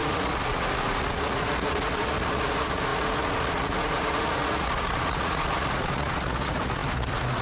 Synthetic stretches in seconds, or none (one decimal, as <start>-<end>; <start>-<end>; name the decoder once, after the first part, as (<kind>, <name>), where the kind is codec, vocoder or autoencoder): 0.0-7.4 (vocoder, Vocos)